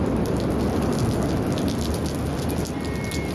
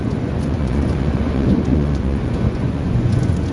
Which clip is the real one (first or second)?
first